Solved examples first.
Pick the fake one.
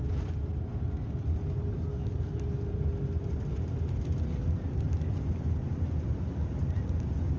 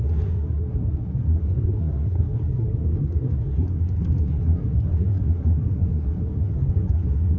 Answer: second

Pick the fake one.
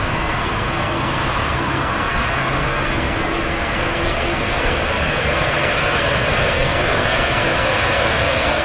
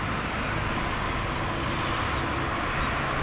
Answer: first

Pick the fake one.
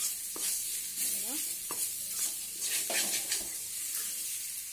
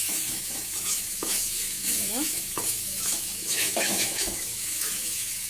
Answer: second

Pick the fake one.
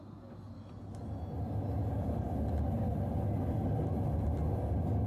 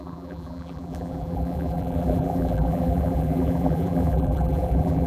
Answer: second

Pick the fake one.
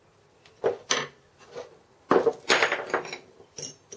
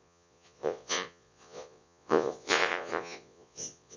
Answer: second